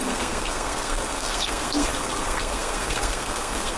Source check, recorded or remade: remade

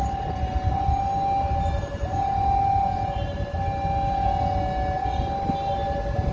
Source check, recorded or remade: recorded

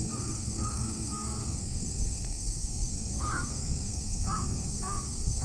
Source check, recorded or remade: remade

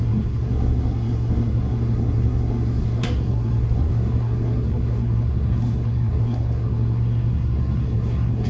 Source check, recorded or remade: remade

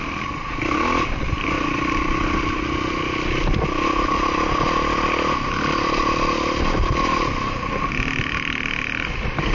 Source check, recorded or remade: recorded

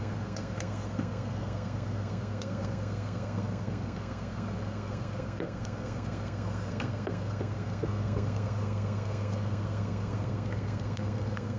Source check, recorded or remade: remade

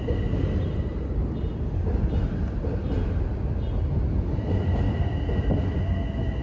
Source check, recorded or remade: recorded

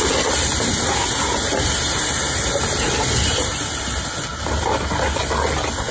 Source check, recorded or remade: recorded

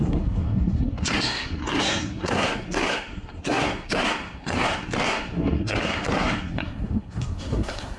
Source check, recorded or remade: remade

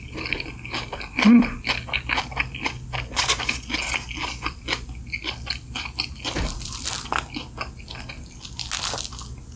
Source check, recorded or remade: recorded